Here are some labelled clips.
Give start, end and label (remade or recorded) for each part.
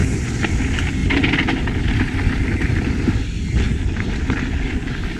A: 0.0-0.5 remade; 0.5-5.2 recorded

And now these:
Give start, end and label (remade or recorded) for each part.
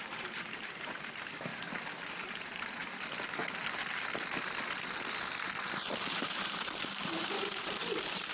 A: 0.0-1.5 remade; 1.5-2.1 recorded; 2.1-2.8 remade; 2.8-6.1 recorded; 6.1-8.3 remade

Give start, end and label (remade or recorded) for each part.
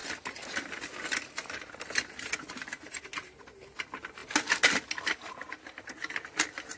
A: 0.0-6.8 recorded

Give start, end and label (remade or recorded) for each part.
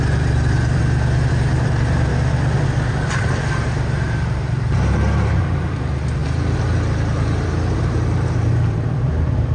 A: 0.0-0.8 remade; 0.8-1.3 recorded; 1.3-2.1 remade; 2.1-2.9 recorded; 2.9-9.5 remade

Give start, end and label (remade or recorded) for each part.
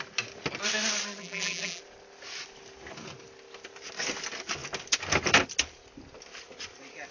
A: 0.0-1.2 recorded; 1.2-1.8 remade; 1.8-7.1 recorded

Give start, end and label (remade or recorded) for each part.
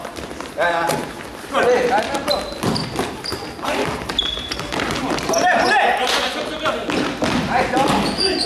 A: 0.0-1.3 recorded; 1.3-6.4 remade; 6.4-8.5 recorded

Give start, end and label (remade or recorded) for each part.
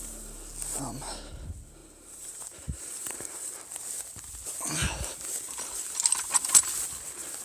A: 0.0-1.8 recorded; 1.8-3.6 remade; 3.6-7.4 recorded